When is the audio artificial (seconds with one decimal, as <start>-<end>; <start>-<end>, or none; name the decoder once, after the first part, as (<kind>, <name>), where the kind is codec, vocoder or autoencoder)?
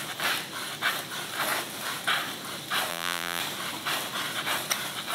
2.9-3.4 (vocoder, BigVGAN v2)